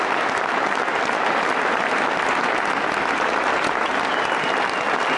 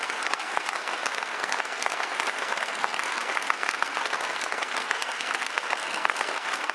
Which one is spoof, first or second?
second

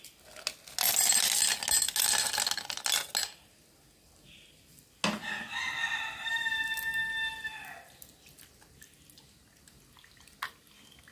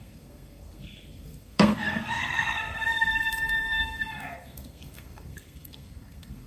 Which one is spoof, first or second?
second